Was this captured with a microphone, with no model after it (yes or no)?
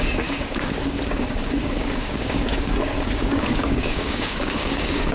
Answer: no